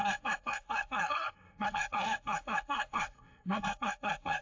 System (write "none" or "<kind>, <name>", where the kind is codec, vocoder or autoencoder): codec, SNAC